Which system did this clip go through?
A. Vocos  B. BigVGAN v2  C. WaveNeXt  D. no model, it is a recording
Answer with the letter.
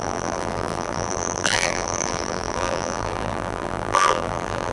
B